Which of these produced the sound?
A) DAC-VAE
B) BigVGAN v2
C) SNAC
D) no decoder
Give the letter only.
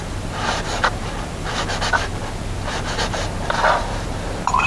B